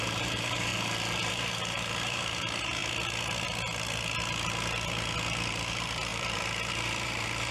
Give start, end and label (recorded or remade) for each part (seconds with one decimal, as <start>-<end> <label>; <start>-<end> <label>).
0.0-0.7 remade; 0.7-1.3 recorded; 1.3-2.8 remade; 2.8-5.5 recorded; 5.5-7.5 remade